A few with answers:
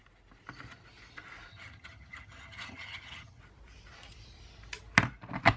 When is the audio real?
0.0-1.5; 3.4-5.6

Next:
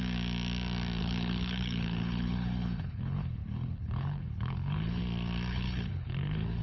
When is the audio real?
0.0-1.0; 5.0-5.5

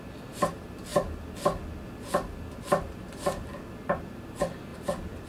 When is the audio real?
0.0-4.7

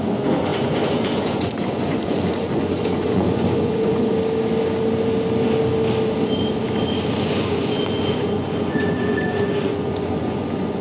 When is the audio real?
4.1-7.2

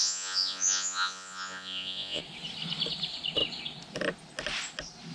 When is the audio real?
2.2-5.1

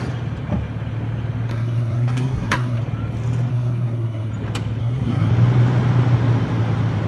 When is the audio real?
0.0-1.5; 2.8-3.5; 4.3-4.8; 5.3-7.1

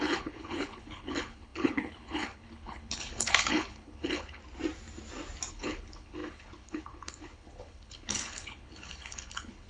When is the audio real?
4.4-5.5

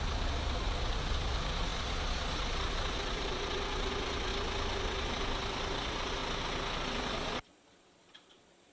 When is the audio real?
4.3-4.8; 5.2-5.8; 6.2-7.0